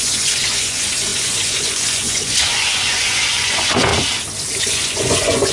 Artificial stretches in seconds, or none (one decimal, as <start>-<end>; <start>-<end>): 0.0-3.9; 4.6-5.5